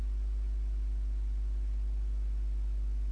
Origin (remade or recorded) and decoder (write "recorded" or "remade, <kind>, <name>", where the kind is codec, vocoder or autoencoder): recorded